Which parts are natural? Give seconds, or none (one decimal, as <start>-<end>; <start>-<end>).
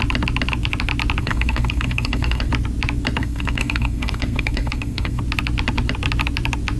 0.0-1.2; 2.5-3.2; 5.2-6.8